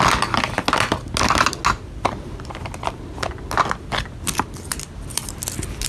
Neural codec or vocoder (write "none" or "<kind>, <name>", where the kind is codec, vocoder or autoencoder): none